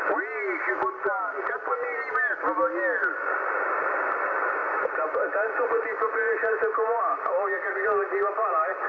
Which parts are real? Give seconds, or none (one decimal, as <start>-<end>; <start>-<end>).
0.0-8.9